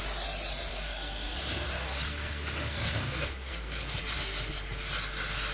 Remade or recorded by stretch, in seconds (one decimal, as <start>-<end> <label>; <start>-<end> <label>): 0.0-0.7 recorded; 0.7-4.0 remade; 4.0-5.5 recorded